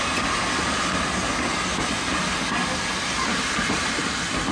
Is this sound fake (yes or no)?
no